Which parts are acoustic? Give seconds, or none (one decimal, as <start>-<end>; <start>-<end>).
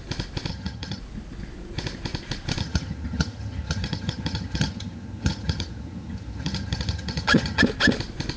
0.0-0.5; 1.0-2.6; 7.6-8.4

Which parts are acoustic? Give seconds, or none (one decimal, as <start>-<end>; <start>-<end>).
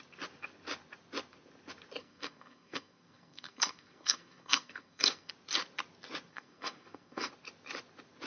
0.0-2.0; 5.3-6.3; 7.3-8.3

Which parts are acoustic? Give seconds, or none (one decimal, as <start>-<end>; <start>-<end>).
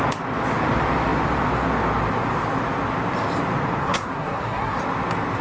0.0-3.8; 4.8-5.4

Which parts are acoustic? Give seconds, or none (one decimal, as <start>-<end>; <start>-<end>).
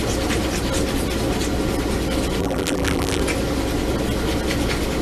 0.0-2.4; 3.2-5.0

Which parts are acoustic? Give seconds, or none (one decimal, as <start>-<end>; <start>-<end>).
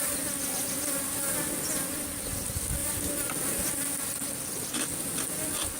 0.0-5.8